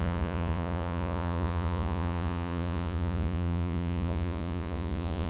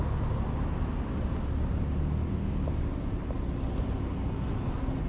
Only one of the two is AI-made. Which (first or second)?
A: first